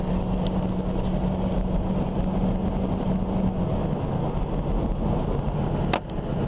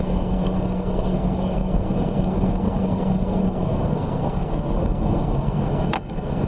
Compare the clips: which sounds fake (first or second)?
second